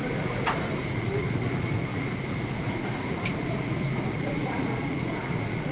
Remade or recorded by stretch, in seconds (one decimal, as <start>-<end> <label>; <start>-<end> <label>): 0.0-5.7 remade